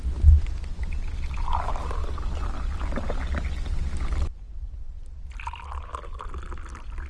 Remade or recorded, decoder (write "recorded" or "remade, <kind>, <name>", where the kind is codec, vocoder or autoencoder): recorded